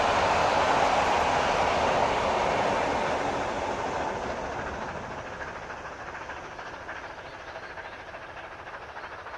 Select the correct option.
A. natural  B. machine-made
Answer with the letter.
A